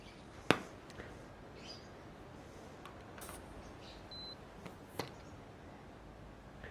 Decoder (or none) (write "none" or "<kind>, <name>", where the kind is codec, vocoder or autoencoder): none